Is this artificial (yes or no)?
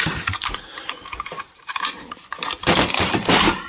yes